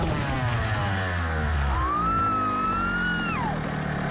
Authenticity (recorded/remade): recorded